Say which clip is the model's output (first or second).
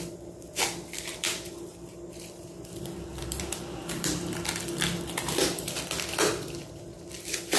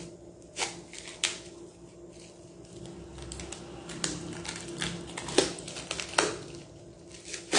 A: first